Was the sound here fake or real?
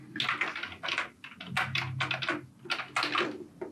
real